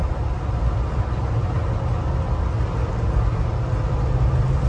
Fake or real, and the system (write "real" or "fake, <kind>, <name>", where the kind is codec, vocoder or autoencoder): real